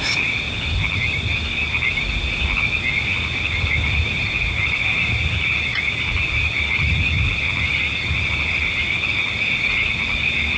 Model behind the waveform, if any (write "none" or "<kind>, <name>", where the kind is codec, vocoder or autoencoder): none